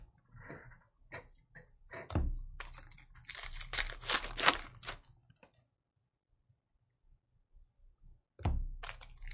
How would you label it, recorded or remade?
recorded